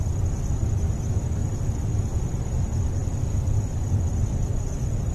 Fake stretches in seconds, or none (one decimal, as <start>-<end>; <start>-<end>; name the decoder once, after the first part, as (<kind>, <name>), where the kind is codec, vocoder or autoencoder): 0.0-1.4 (vocoder, BigVGAN v2); 2.6-3.0; 4.1-5.1